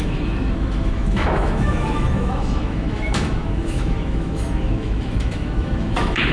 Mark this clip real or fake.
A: fake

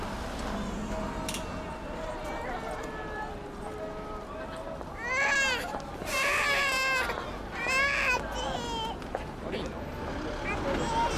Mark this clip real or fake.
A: real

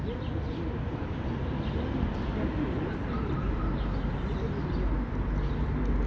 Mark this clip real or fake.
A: real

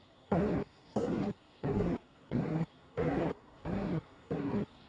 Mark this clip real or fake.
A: fake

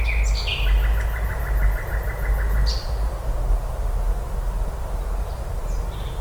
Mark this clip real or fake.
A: real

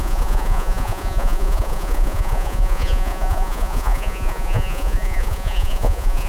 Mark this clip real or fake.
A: fake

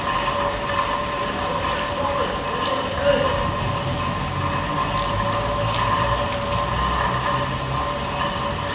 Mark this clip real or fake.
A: real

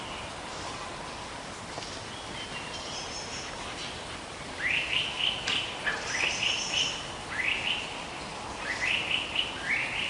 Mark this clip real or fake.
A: real